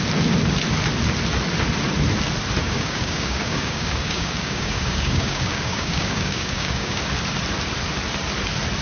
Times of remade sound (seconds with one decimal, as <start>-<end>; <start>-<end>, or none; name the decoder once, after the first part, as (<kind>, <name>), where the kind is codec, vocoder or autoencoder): 2.6-7.0 (codec, DAC)